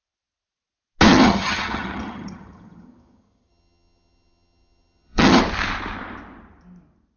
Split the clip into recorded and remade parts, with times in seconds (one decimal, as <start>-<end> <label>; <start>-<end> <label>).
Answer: 0.0-1.1 recorded; 1.1-5.4 remade; 5.4-7.2 recorded